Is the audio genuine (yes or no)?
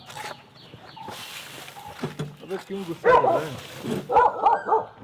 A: yes